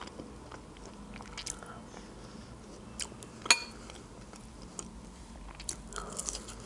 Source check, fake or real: real